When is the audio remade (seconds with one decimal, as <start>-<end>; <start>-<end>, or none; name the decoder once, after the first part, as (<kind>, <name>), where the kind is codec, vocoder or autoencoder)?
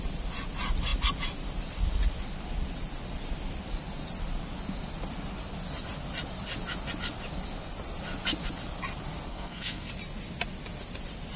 9.3-9.9 (codec, SNAC)